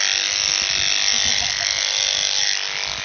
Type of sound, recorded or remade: recorded